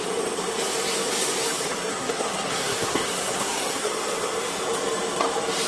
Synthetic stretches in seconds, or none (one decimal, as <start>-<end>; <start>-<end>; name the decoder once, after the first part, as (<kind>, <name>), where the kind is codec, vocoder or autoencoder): 1.9-3.9 (codec, SNAC)